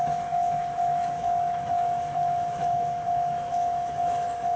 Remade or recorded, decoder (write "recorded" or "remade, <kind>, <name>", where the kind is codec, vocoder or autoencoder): remade, autoencoder, DAC-VAE